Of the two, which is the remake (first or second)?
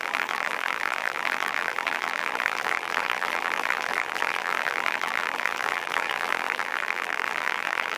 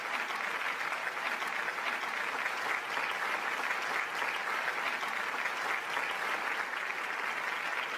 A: first